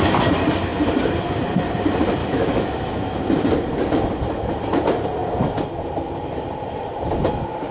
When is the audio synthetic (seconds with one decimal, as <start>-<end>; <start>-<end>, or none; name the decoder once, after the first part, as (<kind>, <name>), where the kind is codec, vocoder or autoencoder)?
2.2-3.2 (autoencoder, DAC-VAE)